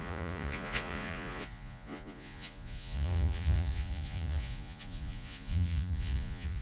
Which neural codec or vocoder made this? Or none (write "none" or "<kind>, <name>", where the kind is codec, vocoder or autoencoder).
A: vocoder, Vocos